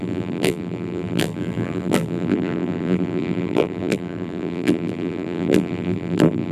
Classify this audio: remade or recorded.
remade